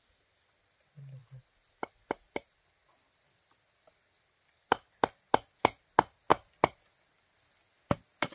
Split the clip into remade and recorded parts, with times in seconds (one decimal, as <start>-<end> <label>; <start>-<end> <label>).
0.0-8.3 recorded